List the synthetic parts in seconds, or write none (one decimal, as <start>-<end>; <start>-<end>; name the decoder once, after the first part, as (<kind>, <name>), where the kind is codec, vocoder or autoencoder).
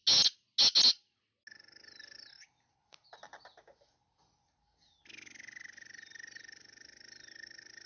none